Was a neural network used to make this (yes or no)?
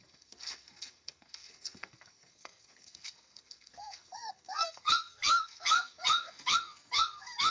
yes